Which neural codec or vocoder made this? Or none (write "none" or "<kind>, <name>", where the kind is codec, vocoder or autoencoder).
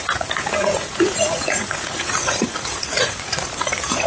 vocoder, Vocos